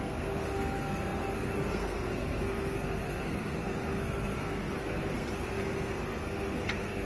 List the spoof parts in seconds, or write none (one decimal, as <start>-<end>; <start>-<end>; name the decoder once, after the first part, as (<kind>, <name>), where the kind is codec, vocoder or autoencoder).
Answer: 0.0-7.1 (codec, SNAC)